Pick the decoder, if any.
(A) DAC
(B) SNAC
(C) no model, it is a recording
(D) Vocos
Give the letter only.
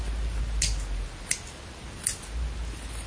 C